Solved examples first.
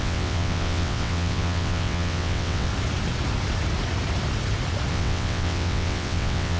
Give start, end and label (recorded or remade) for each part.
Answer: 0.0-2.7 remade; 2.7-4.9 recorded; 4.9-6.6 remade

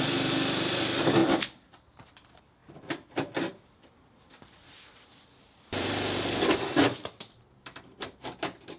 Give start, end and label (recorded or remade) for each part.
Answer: 0.0-8.8 remade

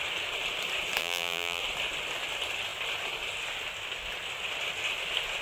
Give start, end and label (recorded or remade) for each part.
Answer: 0.0-1.0 recorded; 1.0-1.6 remade; 1.6-5.4 recorded

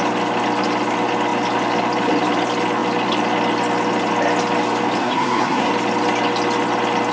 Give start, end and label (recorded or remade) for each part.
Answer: 0.0-5.0 recorded; 5.0-5.7 remade; 5.7-7.1 recorded

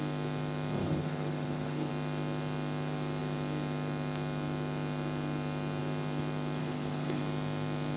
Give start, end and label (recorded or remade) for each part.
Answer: 0.0-0.8 recorded; 0.8-1.9 remade; 1.9-6.6 recorded; 6.6-7.2 remade; 7.2-8.0 recorded

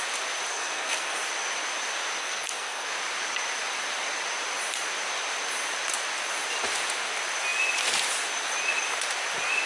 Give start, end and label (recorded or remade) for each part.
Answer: 0.0-0.5 recorded; 0.5-1.2 remade; 1.2-2.2 recorded; 2.2-2.9 remade; 2.9-9.7 recorded